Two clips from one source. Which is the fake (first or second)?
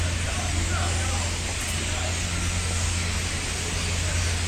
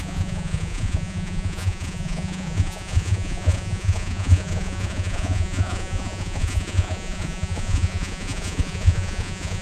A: second